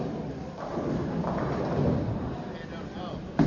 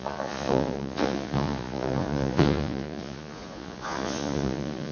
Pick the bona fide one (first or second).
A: first